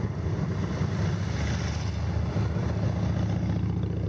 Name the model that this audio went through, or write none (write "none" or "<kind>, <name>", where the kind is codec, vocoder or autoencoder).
none